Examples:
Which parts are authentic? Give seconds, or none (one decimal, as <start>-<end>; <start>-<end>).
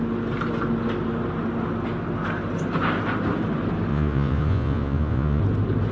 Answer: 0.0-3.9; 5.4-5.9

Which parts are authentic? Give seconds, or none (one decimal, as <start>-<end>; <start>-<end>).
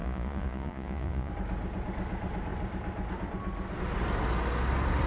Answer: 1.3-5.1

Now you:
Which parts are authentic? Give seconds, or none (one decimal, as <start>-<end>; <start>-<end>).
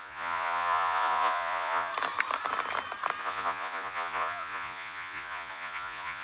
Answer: 1.9-3.2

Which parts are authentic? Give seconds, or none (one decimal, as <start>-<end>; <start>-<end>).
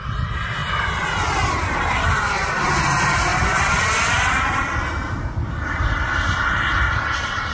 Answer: 0.0-7.5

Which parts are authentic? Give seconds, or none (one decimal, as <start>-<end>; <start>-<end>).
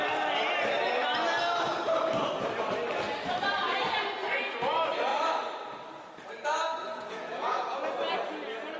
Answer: 0.0-6.8; 7.8-8.8